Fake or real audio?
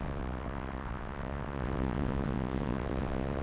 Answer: fake